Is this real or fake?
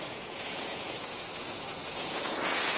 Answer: fake